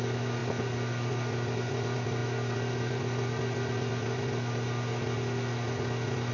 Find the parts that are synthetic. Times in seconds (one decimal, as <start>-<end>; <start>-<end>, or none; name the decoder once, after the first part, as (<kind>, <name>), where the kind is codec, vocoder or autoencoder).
none